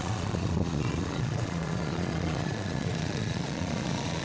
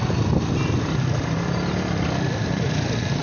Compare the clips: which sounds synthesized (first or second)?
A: first